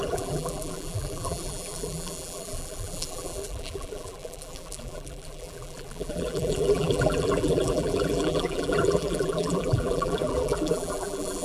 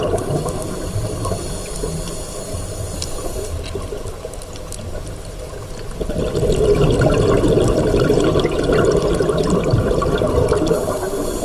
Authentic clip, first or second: second